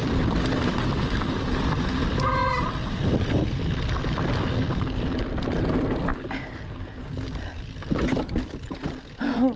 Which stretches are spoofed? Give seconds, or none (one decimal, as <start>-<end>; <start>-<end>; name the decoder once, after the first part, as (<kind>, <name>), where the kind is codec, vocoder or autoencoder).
0.0-2.4 (vocoder, BigVGAN v2); 2.9-9.6